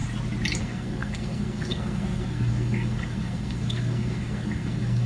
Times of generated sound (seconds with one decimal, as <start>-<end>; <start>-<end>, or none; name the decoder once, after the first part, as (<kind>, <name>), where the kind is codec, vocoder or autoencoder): 0.6-5.1 (codec, SNAC)